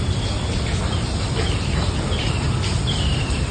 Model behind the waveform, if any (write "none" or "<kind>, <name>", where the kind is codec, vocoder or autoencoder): none